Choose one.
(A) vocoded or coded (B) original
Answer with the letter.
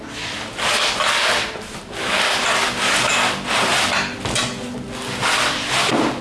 B